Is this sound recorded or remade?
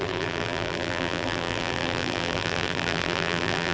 remade